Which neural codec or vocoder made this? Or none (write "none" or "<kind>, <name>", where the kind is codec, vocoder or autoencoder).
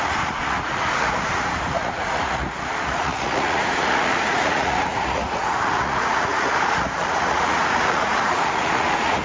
vocoder, Vocos